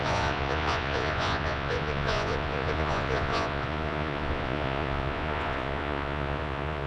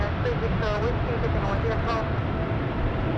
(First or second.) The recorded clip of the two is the second